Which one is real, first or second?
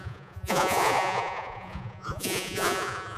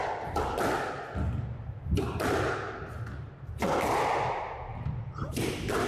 second